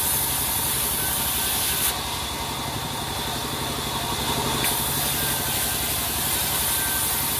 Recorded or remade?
recorded